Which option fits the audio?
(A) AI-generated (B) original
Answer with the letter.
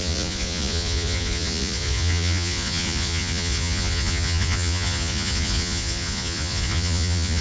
A